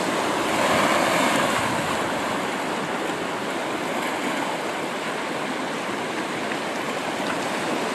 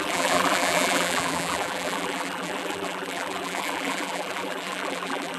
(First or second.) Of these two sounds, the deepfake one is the second